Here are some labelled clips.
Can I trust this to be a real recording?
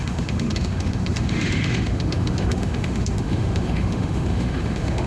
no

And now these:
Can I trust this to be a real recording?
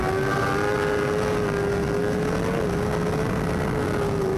yes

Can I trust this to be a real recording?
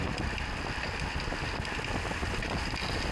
yes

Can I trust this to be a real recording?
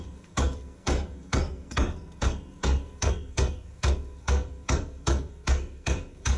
no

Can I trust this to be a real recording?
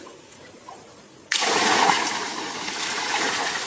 no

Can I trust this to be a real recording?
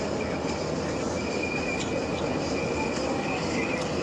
yes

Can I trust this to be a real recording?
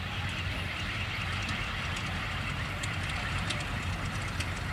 yes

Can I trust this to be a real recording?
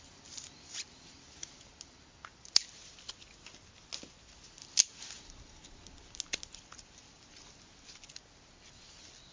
yes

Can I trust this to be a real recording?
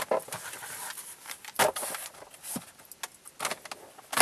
yes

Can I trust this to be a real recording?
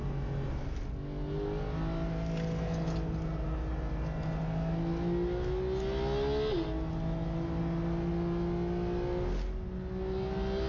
yes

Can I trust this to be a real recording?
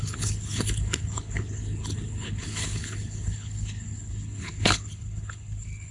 no